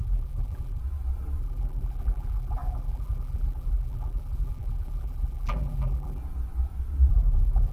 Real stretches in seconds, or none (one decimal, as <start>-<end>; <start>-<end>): 0.8-1.4; 6.2-7.1